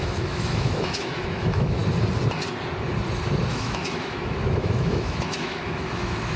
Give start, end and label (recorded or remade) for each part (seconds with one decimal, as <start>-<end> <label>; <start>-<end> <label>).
0.0-1.8 remade; 1.8-3.5 recorded; 3.5-6.4 remade